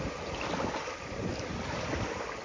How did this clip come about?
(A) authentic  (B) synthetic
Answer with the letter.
A